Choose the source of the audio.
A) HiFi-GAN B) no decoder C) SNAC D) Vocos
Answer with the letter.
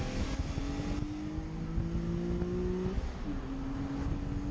B